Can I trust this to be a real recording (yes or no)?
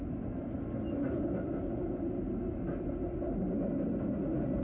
yes